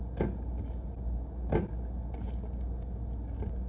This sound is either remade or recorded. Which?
recorded